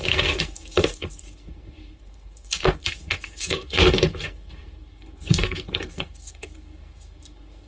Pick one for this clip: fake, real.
fake